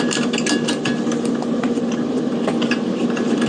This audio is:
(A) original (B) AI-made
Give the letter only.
A